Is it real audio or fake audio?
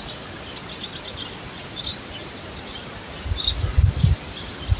real